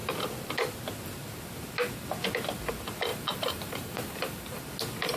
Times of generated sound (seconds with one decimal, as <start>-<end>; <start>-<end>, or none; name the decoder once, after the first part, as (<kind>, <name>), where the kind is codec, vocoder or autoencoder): 3.1-4.6 (vocoder, BigVGAN v2)